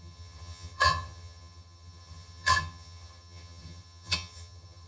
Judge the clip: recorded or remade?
remade